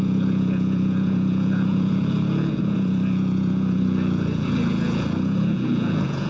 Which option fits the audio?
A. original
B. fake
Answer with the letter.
B